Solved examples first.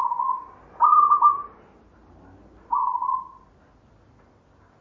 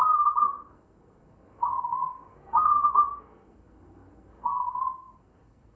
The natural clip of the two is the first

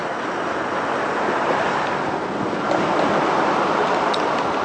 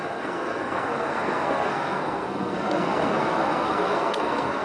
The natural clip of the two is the first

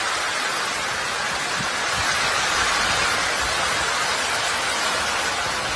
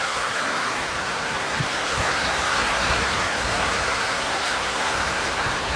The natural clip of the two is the first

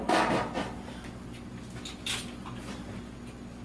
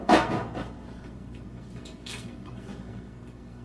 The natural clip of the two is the first